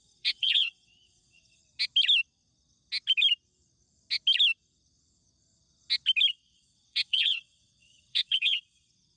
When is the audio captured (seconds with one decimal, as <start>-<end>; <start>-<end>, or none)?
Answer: 1.6-6.3